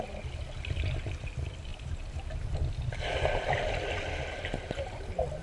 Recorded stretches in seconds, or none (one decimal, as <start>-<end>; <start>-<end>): 0.0-5.4